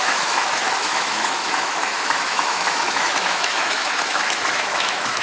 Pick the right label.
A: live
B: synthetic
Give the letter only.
B